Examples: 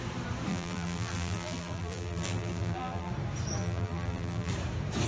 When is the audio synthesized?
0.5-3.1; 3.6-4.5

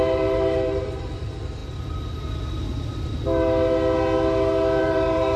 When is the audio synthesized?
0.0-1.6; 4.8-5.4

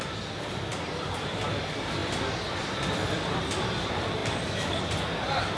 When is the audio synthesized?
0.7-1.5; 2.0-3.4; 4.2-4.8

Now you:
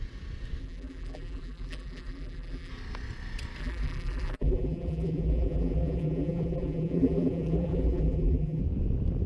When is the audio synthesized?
0.6-2.7; 3.6-8.6

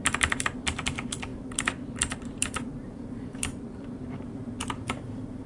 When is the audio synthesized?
0.0-5.5